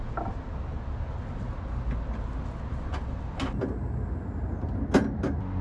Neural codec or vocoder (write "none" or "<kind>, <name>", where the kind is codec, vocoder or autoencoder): none